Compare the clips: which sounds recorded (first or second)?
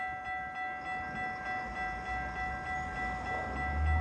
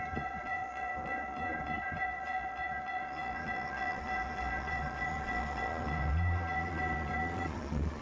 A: first